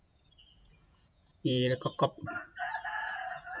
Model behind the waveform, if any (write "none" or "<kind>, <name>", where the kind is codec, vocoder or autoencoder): vocoder, Vocos